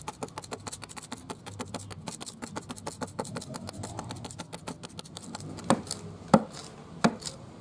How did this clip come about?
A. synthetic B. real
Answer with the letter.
B